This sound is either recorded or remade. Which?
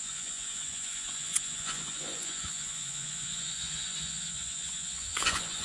remade